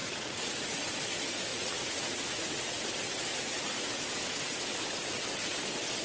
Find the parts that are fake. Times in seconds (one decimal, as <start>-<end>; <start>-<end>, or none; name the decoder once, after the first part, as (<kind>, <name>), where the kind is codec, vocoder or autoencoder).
0.0-0.8 (vocoder, Vocos); 1.5-2.8; 3.3-4.0